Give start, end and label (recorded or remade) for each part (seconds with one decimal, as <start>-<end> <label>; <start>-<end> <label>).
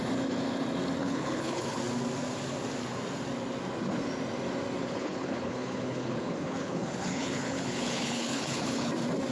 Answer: 0.0-1.0 recorded; 1.0-1.8 remade; 1.8-4.8 recorded; 4.8-8.9 remade; 8.9-9.3 recorded